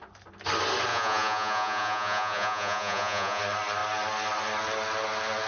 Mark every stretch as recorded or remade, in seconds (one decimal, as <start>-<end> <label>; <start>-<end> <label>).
0.0-0.9 recorded; 0.9-3.4 remade; 3.4-5.5 recorded